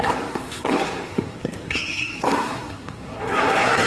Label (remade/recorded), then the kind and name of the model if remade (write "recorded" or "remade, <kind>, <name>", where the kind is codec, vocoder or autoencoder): remade, codec, SNAC